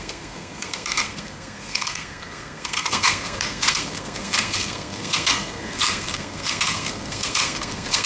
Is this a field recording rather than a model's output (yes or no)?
no